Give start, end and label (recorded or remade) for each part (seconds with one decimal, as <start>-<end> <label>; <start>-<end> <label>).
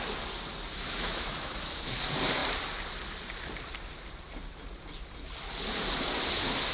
0.0-0.7 recorded; 0.7-1.7 remade; 1.7-6.7 recorded